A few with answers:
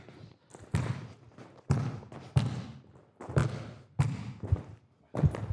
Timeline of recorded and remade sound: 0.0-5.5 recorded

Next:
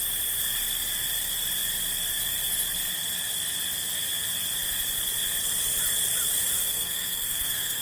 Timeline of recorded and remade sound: 0.0-6.6 recorded; 6.6-7.8 remade

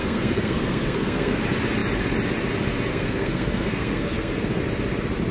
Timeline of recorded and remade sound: 0.0-1.4 remade; 1.4-2.9 recorded; 2.9-4.6 remade; 4.6-5.3 recorded